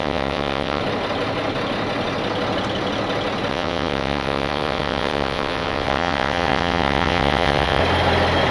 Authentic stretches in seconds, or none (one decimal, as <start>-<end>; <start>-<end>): 0.8-3.5; 7.8-8.5